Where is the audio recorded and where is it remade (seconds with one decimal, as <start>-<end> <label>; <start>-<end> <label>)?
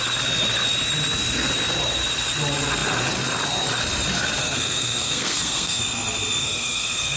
0.0-4.4 recorded; 4.4-5.8 remade; 5.8-6.4 recorded; 6.4-7.2 remade